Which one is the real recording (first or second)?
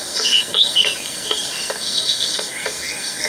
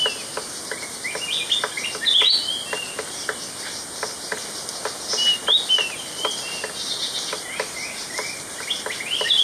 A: second